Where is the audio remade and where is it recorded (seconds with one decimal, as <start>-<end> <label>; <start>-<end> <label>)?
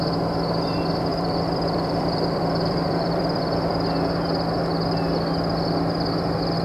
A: 0.0-1.1 recorded; 1.1-3.7 remade; 3.7-6.6 recorded